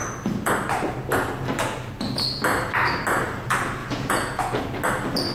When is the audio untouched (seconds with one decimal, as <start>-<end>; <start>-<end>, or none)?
0.0-3.8; 4.7-5.3